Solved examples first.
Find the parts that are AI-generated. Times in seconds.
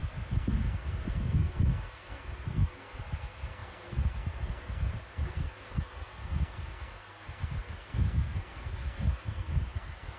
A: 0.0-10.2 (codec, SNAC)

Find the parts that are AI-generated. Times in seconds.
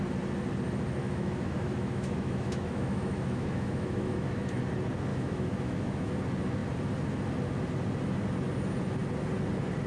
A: 1.0-4.6 (autoencoder, DAC-VAE); 5.1-6.1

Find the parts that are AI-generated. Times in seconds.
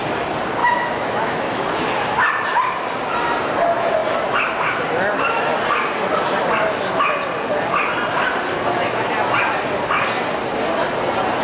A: 0.6-2.3 (autoencoder, DAC-VAE)